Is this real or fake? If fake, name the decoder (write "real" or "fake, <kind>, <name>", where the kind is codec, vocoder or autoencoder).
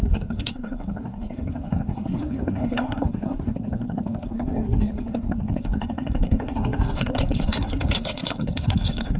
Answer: fake, codec, SNAC